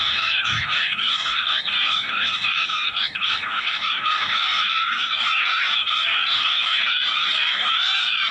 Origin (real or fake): fake